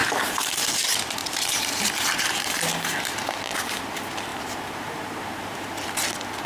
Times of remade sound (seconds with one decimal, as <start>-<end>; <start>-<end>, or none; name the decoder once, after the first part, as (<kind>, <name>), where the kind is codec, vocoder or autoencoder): 0.0-0.7 (vocoder, BigVGAN v2); 1.2-2.6; 4.3-5.7